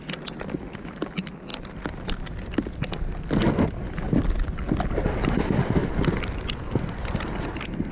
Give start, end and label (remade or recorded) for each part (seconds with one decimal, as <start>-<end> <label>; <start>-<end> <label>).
0.0-7.9 recorded